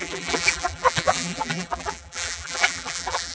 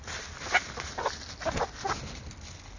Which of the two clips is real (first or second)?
second